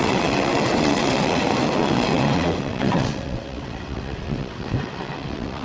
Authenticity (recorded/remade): remade